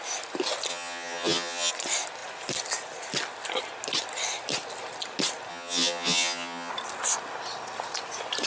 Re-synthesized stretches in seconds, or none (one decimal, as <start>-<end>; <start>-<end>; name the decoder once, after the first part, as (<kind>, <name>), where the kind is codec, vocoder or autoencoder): 0.7-1.7 (vocoder, HiFi-GAN); 5.5-6.7